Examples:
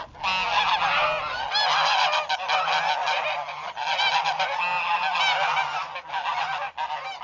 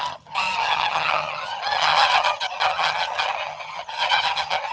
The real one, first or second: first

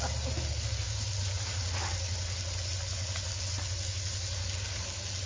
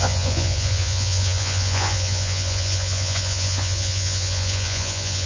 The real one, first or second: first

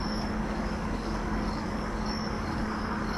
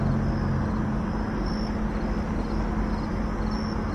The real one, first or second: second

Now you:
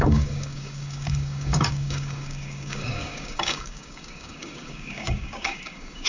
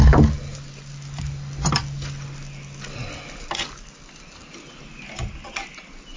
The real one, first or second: second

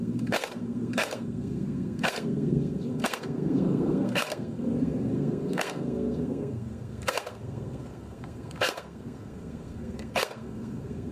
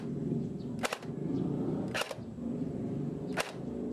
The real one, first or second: second